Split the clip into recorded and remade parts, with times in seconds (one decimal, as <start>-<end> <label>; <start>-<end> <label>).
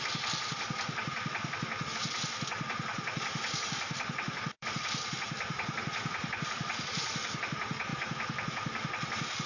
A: 0.0-2.9 recorded; 2.9-7.4 remade; 7.4-9.5 recorded